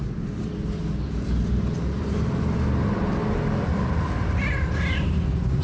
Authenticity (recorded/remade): recorded